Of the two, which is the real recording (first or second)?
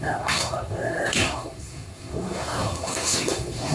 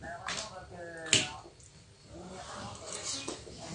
second